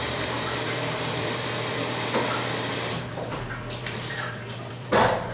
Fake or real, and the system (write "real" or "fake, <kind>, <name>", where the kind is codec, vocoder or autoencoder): fake, vocoder, BigVGAN v2